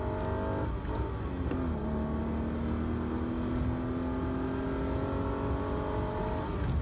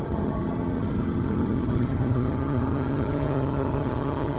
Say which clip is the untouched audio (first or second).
first